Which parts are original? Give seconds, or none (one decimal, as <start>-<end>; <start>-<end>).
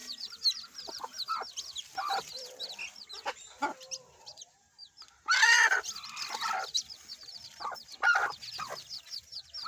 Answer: 0.0-3.6; 4.1-4.8; 8.4-9.7